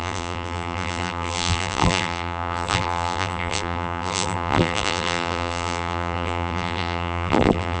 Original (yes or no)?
no